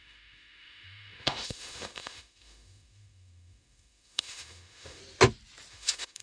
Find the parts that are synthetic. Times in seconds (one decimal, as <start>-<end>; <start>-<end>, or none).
0.0-5.0; 5.7-6.2